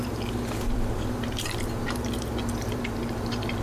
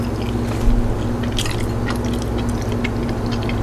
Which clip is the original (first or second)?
second